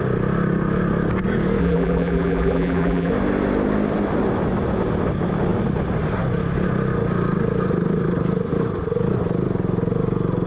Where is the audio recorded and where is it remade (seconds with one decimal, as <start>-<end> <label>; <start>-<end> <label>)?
0.0-1.6 recorded; 1.6-3.1 remade; 3.1-10.5 recorded